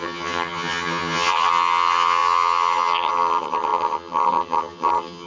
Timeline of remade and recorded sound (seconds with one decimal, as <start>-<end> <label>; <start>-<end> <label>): 0.0-5.3 remade

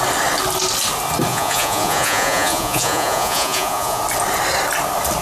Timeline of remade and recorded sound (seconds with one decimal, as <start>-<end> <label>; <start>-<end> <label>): 0.0-1.3 recorded; 1.3-4.0 remade; 4.0-5.2 recorded

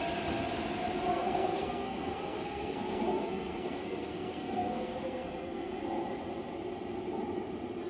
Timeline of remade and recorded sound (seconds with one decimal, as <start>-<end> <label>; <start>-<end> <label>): 0.0-1.1 recorded; 1.1-5.8 remade; 5.8-7.9 recorded

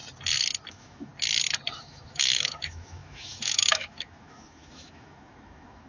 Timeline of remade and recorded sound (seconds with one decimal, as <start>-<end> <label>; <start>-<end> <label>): 0.0-0.7 recorded; 0.7-1.1 remade; 1.1-1.8 recorded; 1.8-5.9 remade

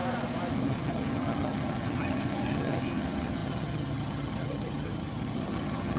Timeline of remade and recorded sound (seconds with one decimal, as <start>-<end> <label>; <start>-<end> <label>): 0.0-0.5 recorded; 0.5-6.0 remade

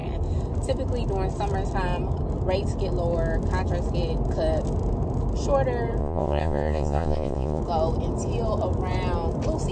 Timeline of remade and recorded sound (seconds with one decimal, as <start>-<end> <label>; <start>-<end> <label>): 0.0-6.0 recorded; 6.0-7.6 remade; 7.6-9.7 recorded